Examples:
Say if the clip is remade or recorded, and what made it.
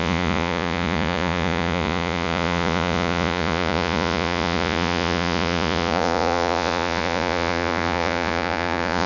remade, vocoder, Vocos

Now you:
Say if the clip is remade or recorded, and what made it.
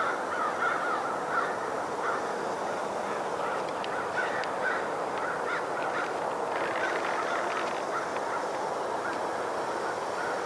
recorded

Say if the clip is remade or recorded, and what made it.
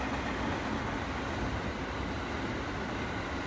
recorded